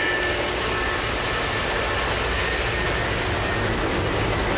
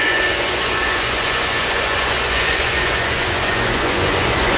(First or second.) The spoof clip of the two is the second